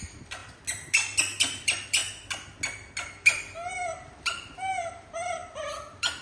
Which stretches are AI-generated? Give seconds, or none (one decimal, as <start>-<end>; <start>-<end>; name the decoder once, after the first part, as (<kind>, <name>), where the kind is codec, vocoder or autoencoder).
0.0-0.4 (vocoder, BigVGAN v2); 1.2-2.0; 3.1-6.2